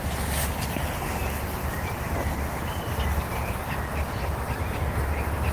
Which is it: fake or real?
real